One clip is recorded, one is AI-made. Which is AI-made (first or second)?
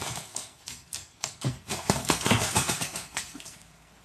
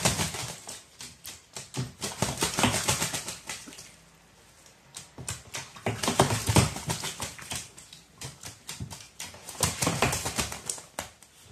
first